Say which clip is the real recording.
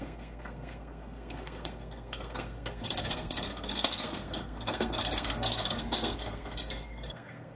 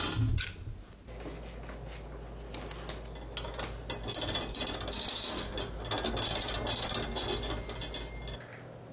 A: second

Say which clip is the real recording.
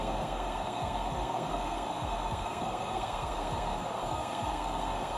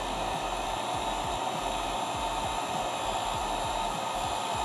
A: second